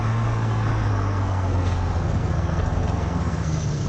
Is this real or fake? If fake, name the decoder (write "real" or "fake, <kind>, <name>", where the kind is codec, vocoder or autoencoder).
fake, codec, SNAC